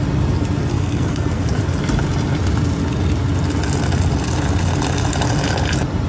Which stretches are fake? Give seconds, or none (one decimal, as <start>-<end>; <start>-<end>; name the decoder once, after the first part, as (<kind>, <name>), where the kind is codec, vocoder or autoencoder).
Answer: 0.7-1.6 (codec, SNAC)